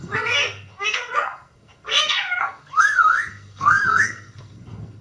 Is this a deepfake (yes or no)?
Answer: yes